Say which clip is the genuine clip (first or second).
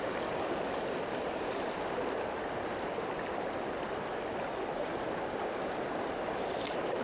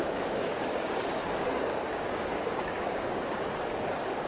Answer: first